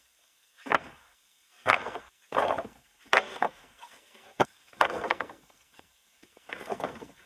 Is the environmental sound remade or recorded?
remade